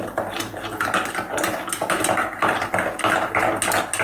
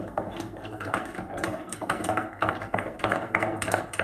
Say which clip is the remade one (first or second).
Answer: second